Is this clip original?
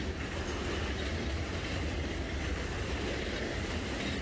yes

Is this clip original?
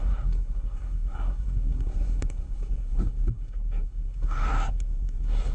no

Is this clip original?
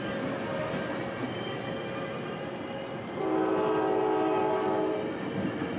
yes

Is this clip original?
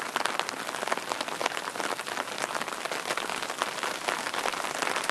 yes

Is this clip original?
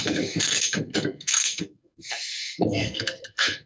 no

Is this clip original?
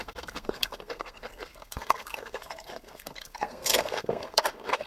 no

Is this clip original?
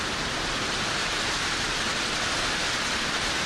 yes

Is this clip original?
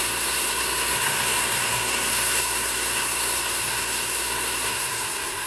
no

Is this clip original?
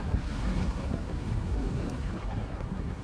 no